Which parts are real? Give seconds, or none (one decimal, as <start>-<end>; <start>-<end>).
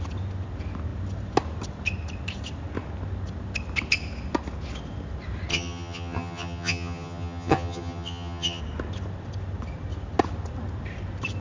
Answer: 0.0-5.5; 8.6-11.4